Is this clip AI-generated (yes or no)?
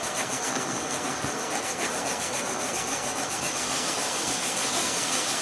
yes